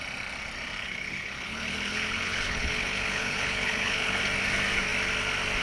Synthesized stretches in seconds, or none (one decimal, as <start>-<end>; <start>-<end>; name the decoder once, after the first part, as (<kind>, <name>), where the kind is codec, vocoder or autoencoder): 0.8-4.2 (codec, HILCodec)